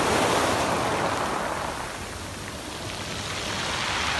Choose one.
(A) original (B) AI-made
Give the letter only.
A